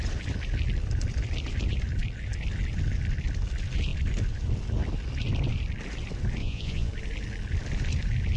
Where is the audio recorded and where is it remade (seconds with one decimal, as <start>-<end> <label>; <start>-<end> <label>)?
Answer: 0.0-6.4 recorded; 6.4-6.9 remade; 6.9-8.4 recorded